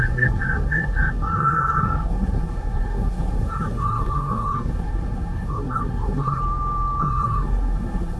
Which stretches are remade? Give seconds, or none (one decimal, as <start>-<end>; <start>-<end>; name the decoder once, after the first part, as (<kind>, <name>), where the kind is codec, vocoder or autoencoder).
0.0-6.4 (codec, SNAC); 7.0-8.2

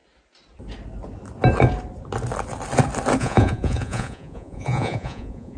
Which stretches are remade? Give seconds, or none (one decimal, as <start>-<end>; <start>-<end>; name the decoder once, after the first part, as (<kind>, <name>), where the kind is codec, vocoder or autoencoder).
3.2-5.6 (vocoder, Vocos)

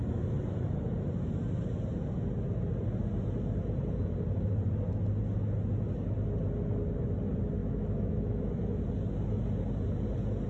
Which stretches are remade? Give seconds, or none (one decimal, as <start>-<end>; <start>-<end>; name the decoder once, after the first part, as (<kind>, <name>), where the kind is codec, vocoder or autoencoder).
7.6-8.8 (autoencoder, DAC-VAE)

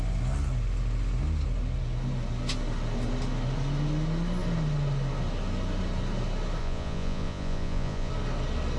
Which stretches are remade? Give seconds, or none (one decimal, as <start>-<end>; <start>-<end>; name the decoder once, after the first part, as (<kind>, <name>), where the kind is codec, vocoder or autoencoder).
6.6-8.1 (vocoder, Vocos)

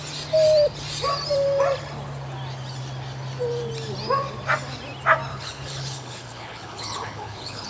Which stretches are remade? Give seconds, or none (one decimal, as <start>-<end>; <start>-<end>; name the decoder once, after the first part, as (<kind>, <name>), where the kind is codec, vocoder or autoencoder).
5.3-7.7 (codec, HILCodec)

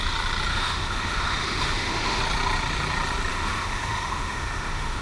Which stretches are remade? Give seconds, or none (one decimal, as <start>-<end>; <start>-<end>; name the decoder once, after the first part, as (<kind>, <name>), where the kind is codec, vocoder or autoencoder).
0.5-2.2 (autoencoder, DAC-VAE); 3.3-5.0

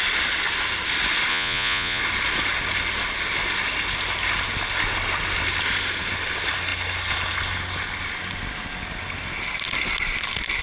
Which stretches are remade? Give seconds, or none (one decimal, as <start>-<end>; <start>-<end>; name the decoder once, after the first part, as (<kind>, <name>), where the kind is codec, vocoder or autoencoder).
1.3-2.0 (vocoder, Vocos)